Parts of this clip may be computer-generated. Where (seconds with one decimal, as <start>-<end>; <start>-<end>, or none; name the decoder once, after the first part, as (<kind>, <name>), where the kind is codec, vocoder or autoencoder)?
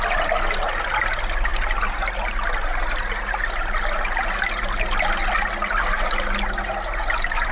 none